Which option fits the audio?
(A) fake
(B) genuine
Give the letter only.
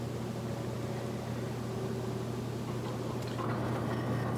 B